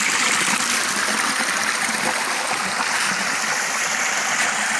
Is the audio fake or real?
fake